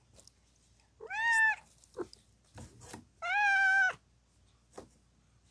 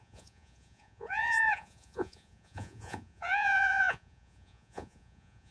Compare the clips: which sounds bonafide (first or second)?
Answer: first